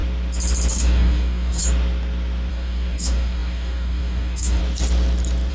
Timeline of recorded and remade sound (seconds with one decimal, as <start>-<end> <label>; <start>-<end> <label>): 0.0-0.7 recorded; 0.7-1.6 remade; 1.6-2.5 recorded; 2.5-4.6 remade; 4.6-5.5 recorded